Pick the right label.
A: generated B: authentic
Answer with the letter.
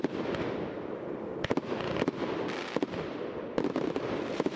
B